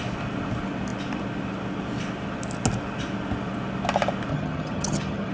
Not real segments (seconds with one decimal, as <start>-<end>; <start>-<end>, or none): 4.3-5.3